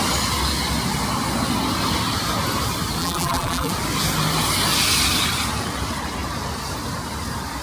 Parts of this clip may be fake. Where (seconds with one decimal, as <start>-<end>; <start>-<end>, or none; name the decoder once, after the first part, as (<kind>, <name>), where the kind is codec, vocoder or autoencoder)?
3.0-3.7 (vocoder, BigVGAN v2)